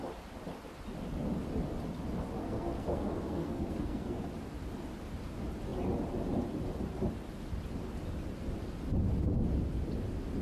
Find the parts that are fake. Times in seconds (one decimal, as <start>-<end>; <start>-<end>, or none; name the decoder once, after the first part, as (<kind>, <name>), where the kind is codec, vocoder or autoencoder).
2.4-4.2 (codec, SNAC)